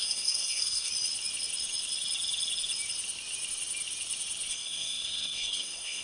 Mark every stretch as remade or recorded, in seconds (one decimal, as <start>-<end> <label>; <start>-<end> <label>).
0.0-0.9 remade; 0.9-4.5 recorded; 4.5-6.0 remade